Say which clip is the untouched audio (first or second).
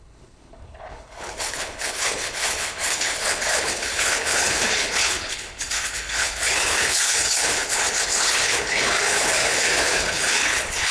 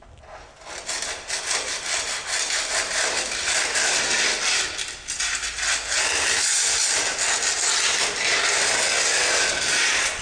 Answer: second